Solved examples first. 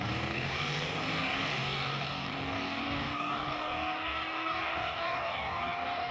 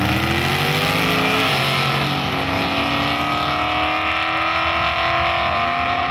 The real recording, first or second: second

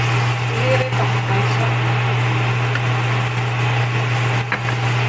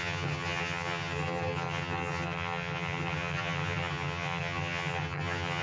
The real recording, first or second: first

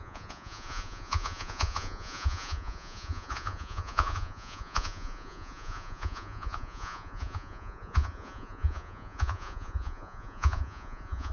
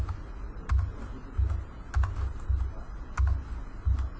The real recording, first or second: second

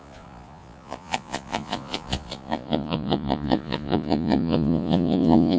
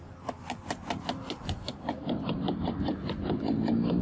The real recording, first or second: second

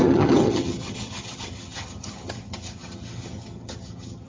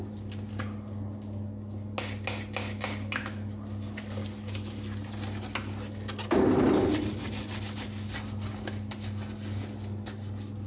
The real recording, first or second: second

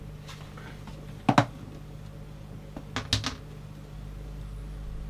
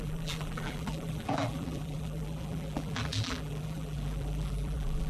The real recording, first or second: first